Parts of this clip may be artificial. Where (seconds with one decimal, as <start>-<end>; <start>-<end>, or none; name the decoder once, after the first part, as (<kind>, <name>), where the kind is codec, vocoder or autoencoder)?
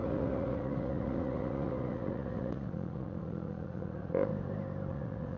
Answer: 0.0-4.3 (vocoder, Vocos); 4.9-5.4